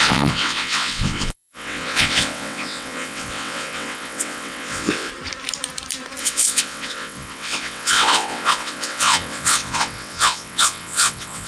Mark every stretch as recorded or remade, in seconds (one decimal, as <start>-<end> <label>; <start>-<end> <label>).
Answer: 0.0-5.1 remade; 5.1-6.2 recorded; 6.2-11.5 remade